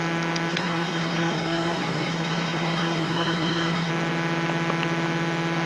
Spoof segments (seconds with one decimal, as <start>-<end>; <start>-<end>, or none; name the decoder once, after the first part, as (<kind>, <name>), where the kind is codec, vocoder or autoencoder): 0.5-3.9 (codec, SNAC)